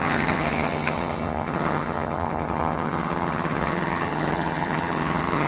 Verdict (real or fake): fake